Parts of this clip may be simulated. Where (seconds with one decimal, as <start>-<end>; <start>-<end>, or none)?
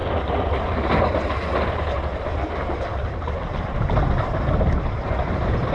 none